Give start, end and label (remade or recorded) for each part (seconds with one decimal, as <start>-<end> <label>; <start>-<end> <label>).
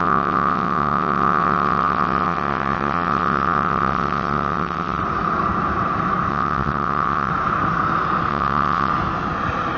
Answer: 0.0-5.0 remade; 5.0-6.3 recorded; 6.3-7.3 remade; 7.3-8.3 recorded; 8.3-8.9 remade; 8.9-9.8 recorded